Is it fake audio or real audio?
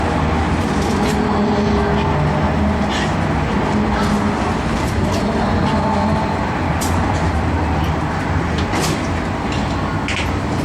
real